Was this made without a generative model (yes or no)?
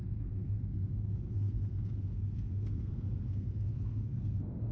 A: no